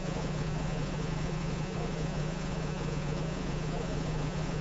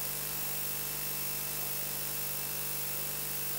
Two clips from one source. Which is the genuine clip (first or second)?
second